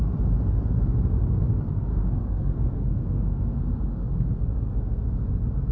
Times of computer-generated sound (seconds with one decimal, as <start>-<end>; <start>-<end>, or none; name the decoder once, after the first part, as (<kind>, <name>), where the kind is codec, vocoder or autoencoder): 1.9-5.3 (codec, SNAC)